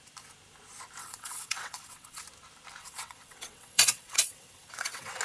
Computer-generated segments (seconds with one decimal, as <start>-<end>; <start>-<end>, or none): 1.0-2.2; 2.8-5.2